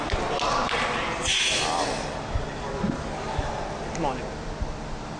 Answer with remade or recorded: recorded